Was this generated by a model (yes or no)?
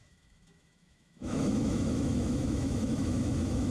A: yes